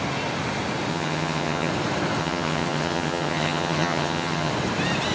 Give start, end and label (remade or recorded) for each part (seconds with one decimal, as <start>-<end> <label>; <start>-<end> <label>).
0.0-0.9 recorded; 0.9-1.7 remade; 1.7-2.2 recorded; 2.2-4.5 remade; 4.5-5.1 recorded